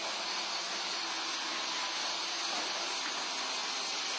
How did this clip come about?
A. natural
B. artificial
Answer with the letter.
A